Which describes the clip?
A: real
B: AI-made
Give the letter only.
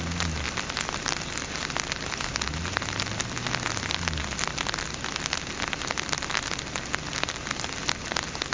A